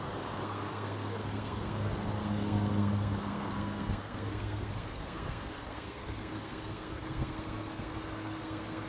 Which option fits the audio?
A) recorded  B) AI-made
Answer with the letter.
B